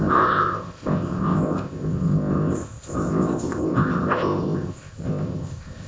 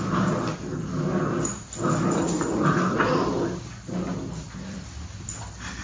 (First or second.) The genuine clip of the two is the second